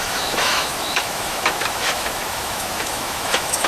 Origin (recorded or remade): remade